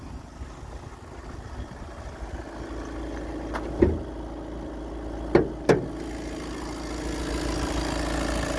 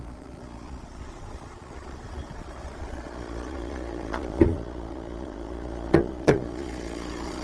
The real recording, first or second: first